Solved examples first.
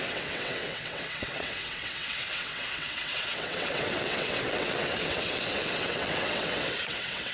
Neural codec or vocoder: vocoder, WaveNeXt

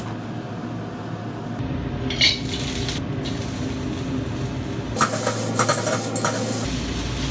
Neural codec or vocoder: none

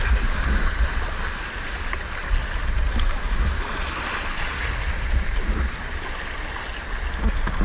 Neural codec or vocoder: none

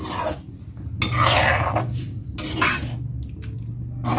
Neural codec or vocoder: none